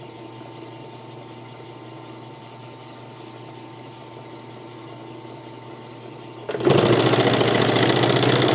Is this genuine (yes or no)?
yes